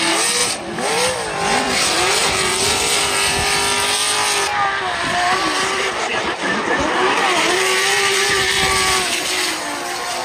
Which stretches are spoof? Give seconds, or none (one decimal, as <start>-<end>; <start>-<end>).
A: 0.4-3.1; 4.5-9.2